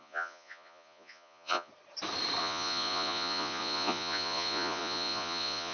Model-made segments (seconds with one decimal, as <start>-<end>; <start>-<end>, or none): 0.0-1.7; 2.4-5.7